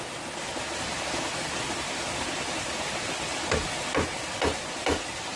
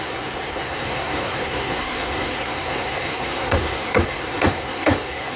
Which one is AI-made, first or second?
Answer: second